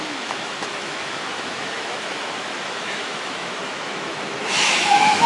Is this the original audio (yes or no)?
no